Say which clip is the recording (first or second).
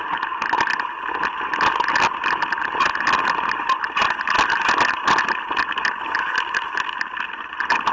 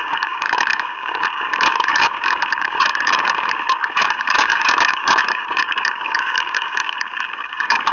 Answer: first